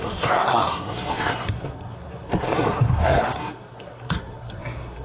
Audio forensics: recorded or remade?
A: remade